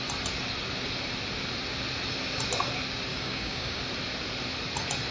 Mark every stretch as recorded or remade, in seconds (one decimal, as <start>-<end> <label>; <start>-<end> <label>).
0.0-3.1 recorded; 3.1-3.8 remade; 3.8-5.1 recorded

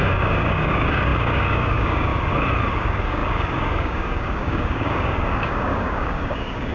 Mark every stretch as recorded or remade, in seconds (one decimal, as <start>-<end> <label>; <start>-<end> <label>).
0.0-2.1 remade; 2.1-2.7 recorded; 2.7-6.7 remade

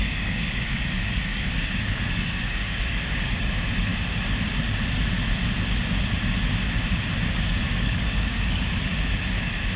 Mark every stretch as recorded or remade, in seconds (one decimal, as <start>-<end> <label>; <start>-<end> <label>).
0.0-3.9 remade; 3.9-7.3 recorded; 7.3-8.9 remade; 8.9-9.8 recorded

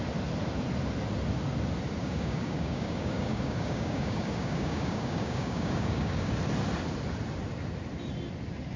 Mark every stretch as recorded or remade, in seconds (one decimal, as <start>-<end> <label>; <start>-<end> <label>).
0.0-2.0 recorded; 2.0-6.3 remade; 6.3-8.8 recorded

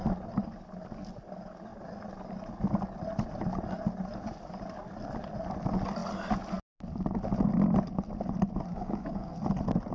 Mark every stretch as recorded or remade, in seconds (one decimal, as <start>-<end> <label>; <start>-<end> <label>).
0.0-8.7 recorded; 8.7-9.3 remade; 9.3-9.9 recorded